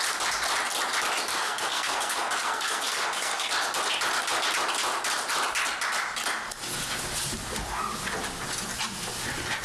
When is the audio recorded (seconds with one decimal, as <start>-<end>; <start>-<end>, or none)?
0.0-1.3; 3.5-9.6